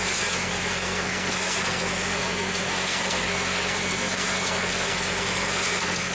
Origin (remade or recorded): remade